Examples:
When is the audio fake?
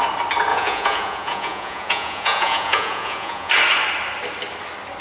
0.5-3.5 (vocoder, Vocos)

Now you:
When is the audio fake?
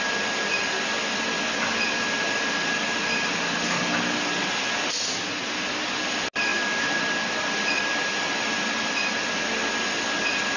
none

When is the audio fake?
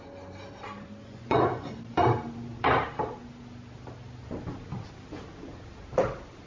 1.0-1.7 (vocoder, Vocos)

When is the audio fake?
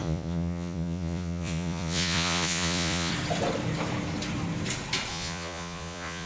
0.0-3.1 (vocoder, Vocos); 5.1-6.3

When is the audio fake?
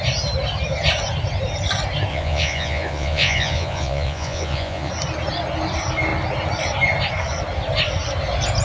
2.1-4.9 (vocoder, Vocos)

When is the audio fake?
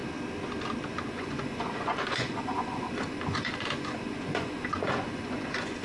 1.1-5.8 (vocoder, Vocos)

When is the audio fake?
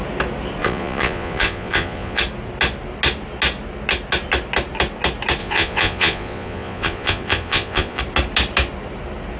0.6-2.2 (vocoder, Vocos); 5.4-8.0